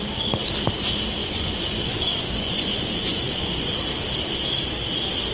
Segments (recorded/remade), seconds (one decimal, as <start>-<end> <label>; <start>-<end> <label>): 0.0-1.2 recorded; 1.2-3.8 remade; 3.8-5.3 recorded